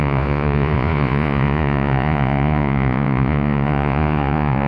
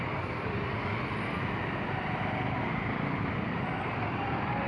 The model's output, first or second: first